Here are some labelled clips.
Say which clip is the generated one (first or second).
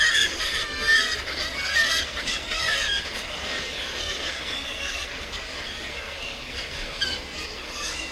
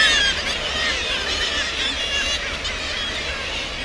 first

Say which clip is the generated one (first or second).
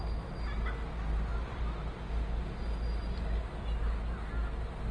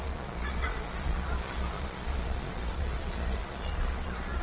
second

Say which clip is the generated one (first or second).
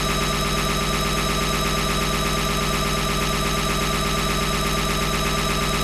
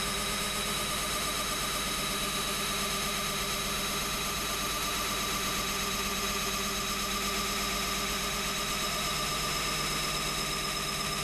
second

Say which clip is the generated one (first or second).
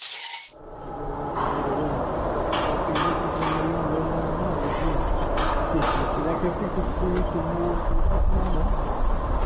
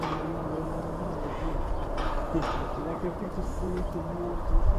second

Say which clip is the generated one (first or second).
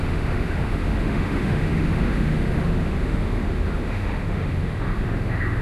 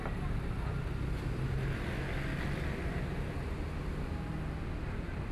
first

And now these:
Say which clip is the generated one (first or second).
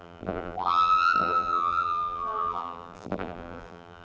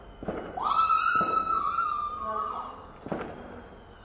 first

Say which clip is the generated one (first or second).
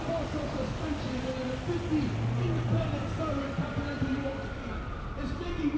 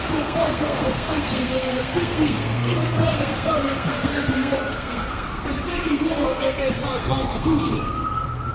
second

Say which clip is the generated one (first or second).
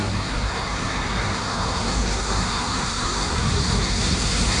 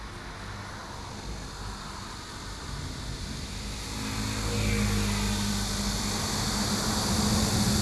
first